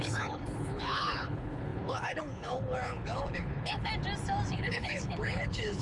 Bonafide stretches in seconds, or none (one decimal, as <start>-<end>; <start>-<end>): 3.9-4.5